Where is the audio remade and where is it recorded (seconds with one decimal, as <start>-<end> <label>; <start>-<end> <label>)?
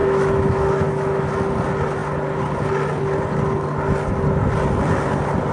0.0-1.3 remade; 1.3-5.5 recorded